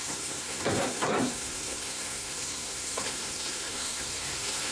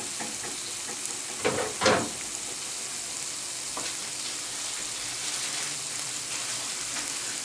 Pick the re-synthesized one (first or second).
first